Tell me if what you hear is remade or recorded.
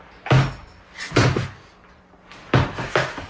recorded